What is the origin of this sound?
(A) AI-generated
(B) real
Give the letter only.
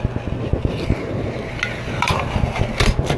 B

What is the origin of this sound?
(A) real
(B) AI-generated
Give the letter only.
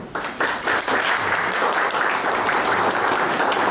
B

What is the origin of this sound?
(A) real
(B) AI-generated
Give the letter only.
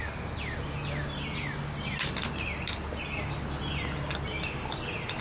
A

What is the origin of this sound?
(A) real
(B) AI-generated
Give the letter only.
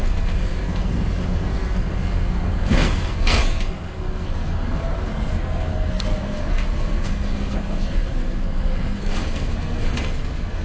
B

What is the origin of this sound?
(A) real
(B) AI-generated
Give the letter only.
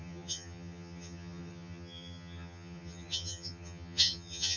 B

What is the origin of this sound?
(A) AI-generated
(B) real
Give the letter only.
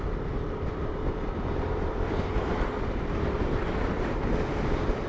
B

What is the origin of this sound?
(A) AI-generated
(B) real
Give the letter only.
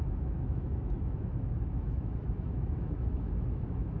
A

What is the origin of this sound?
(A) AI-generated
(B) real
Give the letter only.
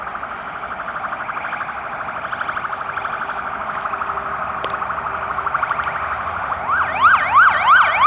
B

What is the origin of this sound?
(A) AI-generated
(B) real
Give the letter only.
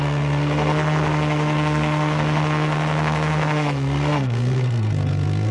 A